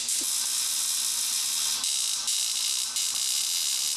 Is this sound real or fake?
real